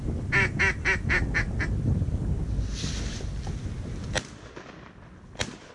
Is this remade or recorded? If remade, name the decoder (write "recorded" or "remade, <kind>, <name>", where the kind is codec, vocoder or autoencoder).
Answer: recorded